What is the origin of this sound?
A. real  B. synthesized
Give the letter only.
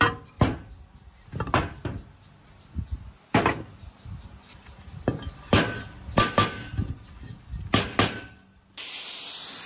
A